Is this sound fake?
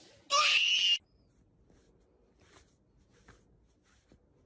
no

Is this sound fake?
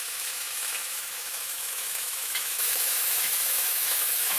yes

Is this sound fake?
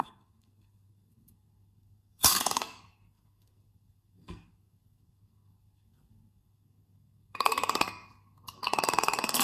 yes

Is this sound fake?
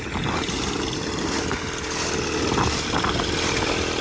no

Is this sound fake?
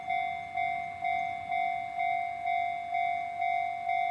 no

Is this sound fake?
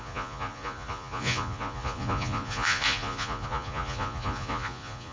yes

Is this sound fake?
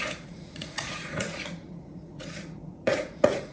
yes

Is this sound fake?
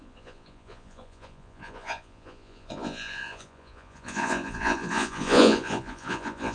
yes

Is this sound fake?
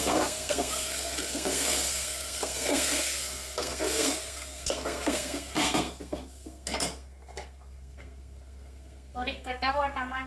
yes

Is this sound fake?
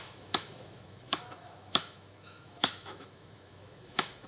yes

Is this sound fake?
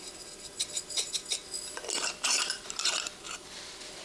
yes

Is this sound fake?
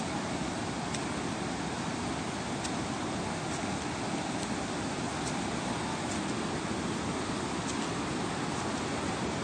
no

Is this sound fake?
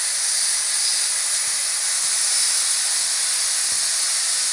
no